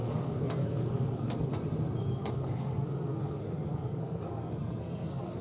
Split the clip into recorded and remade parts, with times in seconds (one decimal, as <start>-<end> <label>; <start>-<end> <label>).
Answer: 0.0-1.5 remade; 1.5-2.0 recorded; 2.0-5.4 remade